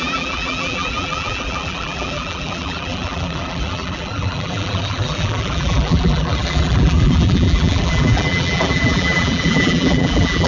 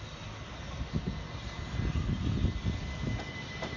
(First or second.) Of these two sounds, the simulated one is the first